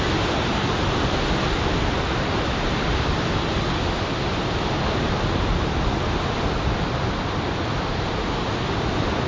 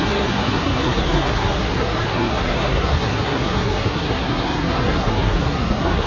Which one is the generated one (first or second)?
second